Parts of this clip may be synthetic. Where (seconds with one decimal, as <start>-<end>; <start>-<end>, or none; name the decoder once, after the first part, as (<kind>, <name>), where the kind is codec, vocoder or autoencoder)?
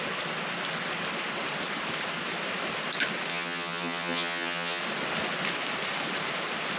3.3-4.8 (vocoder, HiFi-GAN)